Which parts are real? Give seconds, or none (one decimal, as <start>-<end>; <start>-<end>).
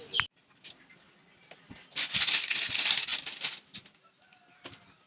0.0-5.1